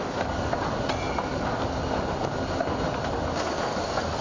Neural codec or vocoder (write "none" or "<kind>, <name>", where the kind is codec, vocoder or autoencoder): none